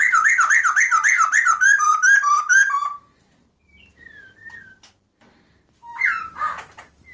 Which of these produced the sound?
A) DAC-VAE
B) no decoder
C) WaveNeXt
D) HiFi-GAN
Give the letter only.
B